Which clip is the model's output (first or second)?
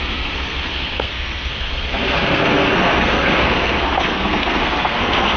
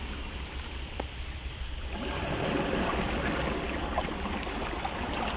first